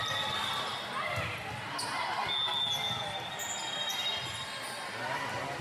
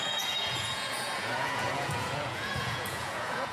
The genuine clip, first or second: first